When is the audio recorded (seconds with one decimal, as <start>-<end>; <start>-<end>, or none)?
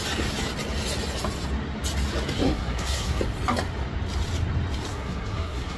0.0-2.4; 3.2-4.9